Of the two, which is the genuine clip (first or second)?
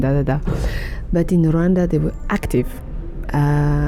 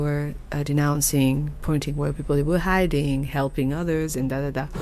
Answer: first